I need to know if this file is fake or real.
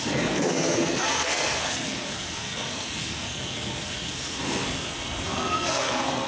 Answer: fake